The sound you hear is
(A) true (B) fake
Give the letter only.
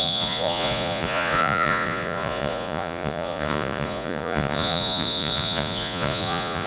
B